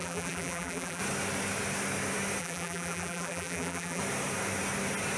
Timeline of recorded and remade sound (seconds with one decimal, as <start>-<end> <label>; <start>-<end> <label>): 0.0-1.0 remade; 1.0-2.4 recorded; 2.4-4.0 remade; 4.0-5.2 recorded